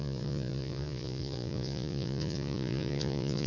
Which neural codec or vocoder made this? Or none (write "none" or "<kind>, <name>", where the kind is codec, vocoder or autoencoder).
vocoder, Vocos